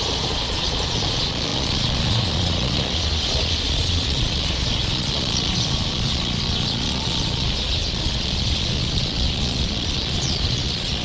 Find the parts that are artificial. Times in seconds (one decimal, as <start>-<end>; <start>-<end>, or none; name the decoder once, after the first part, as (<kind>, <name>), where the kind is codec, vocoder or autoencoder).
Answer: 0.0-11.0 (vocoder, Vocos)